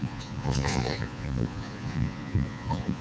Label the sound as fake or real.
fake